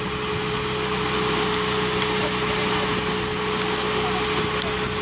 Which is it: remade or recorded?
recorded